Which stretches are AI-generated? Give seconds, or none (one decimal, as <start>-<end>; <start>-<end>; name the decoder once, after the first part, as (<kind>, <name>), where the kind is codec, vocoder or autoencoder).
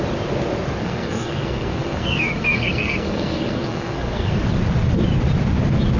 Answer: 0.8-4.4 (codec, SNAC)